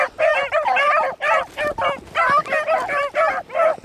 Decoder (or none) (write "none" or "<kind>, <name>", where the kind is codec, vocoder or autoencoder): none